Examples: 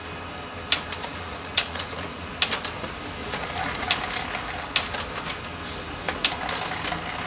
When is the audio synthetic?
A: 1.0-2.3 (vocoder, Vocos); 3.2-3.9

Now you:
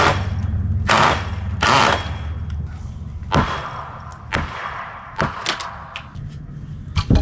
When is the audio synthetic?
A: none